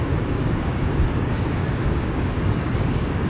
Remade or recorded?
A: remade